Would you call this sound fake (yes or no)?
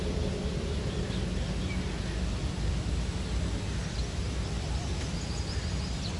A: no